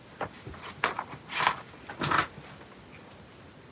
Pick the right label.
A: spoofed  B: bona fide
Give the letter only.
B